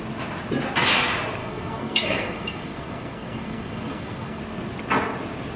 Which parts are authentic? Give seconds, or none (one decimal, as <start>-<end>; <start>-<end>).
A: 0.0-1.4; 4.4-5.6